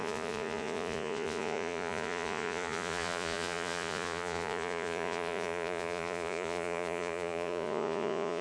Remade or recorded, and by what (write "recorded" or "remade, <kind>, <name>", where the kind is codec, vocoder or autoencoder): remade, vocoder, Vocos